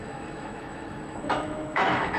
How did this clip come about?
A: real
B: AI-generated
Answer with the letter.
B